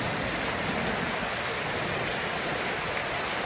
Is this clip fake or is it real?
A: real